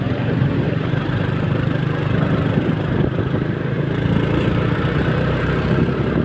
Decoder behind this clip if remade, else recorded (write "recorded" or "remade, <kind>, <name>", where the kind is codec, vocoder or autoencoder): remade, vocoder, BigVGAN v2